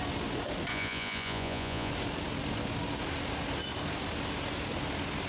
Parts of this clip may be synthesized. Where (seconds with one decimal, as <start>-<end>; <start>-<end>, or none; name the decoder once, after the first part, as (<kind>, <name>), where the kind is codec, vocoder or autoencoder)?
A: 0.7-1.9 (vocoder, Vocos)